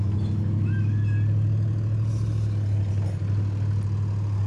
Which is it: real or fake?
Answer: real